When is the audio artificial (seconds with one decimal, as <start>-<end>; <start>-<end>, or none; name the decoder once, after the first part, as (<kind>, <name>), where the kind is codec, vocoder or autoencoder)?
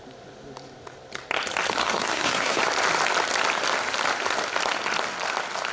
1.8-2.6 (codec, SNAC)